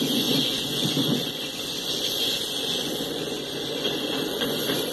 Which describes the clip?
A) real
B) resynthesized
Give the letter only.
B